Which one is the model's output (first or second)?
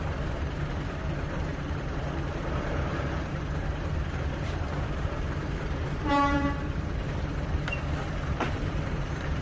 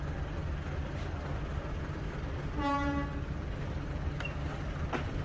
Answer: first